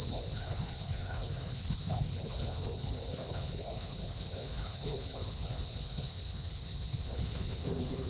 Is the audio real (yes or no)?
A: no